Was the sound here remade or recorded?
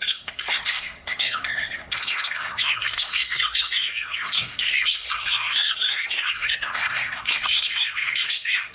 remade